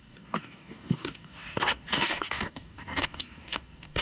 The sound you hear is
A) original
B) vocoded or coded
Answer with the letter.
B